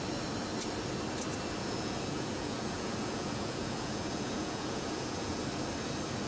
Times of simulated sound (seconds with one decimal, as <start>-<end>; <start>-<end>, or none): 1.6-5.4